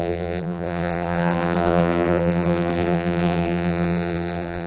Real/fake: fake